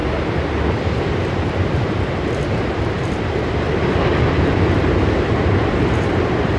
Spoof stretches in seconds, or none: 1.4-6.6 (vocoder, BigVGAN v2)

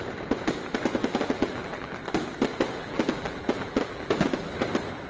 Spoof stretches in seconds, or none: 1.0-1.9 (vocoder, BigVGAN v2); 2.8-4.5

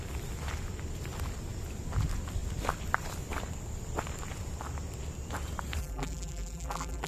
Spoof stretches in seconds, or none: 5.8-7.1 (vocoder, BigVGAN v2)

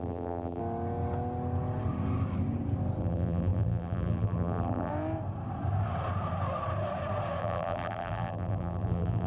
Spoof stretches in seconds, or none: 0.0-0.6 (vocoder, BigVGAN v2); 3.0-4.9; 7.4-9.3

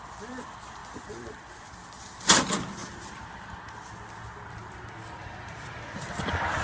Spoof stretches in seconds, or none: 0.0-2.8 (vocoder, BigVGAN v2); 5.2-6.6

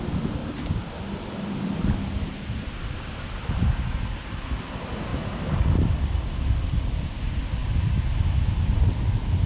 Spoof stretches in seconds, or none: 0.4-2.1 (vocoder, BigVGAN v2); 5.1-6.9